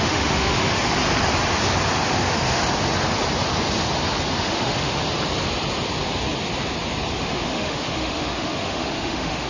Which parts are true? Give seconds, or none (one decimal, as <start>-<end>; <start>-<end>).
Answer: 0.7-2.1; 2.6-4.4; 5.0-7.2